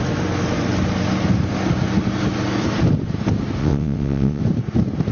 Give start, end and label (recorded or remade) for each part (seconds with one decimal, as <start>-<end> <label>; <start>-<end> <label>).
0.0-3.6 recorded; 3.6-4.4 remade; 4.4-5.1 recorded